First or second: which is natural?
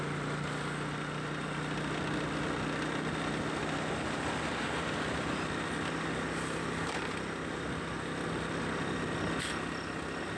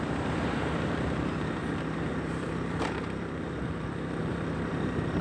first